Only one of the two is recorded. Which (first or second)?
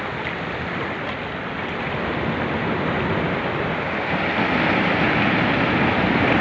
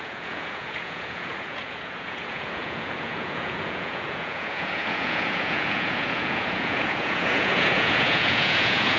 first